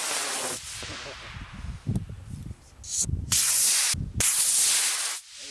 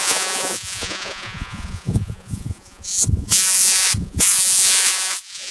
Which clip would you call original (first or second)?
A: first